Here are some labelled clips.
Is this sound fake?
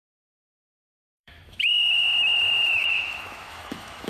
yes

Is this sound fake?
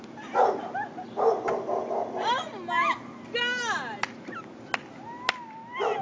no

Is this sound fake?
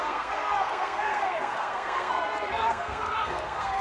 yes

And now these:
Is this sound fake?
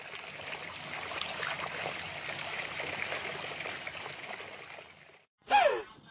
no